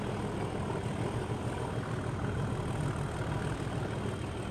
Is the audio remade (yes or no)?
no